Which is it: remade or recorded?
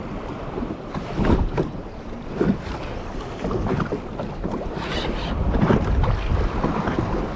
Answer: recorded